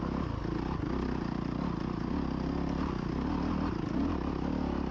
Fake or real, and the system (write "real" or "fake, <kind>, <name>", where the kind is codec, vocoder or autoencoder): real